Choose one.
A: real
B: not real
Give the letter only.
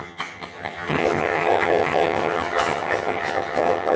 B